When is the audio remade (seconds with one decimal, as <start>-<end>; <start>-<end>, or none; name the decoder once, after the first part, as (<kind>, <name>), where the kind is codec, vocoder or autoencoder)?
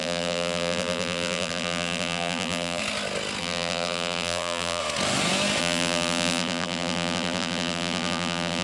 0.0-2.8 (vocoder, BigVGAN v2); 3.4-4.8; 5.6-8.6